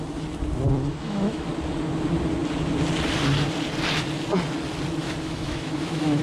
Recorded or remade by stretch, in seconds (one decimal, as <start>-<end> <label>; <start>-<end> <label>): 0.0-0.9 recorded; 0.9-1.5 remade; 1.5-5.0 recorded; 5.0-6.2 remade